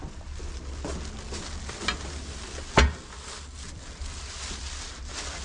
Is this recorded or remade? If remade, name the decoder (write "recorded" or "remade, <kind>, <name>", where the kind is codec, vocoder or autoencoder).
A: recorded